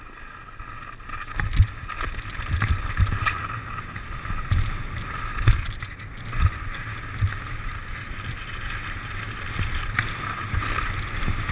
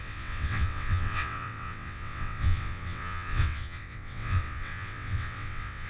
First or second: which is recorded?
first